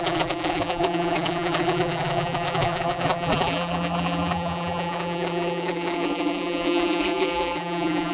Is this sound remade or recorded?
remade